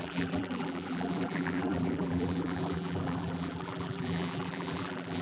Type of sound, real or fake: fake